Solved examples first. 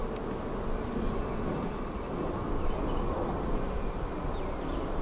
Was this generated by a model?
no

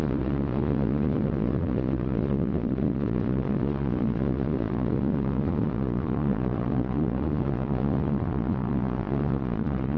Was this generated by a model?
yes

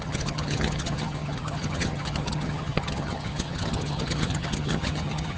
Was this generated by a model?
yes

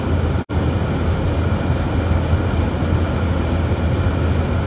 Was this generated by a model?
no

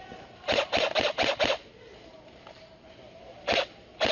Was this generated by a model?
no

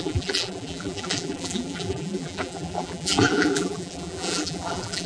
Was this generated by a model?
yes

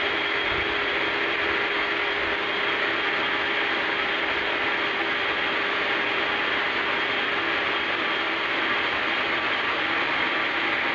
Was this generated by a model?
no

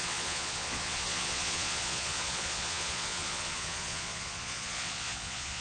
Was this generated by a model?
yes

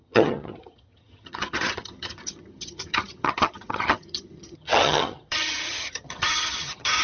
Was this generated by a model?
yes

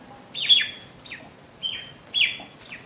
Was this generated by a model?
no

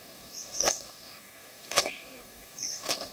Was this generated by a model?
yes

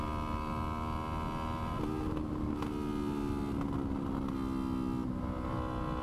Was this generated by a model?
no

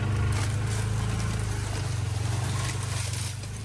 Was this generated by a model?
no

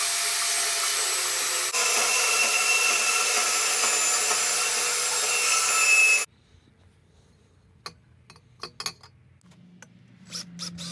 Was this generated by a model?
no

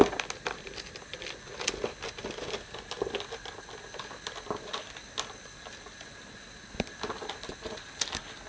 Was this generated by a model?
no